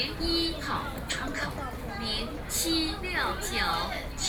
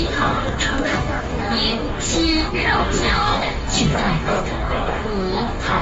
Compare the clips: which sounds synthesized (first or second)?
second